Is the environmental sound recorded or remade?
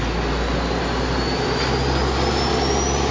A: recorded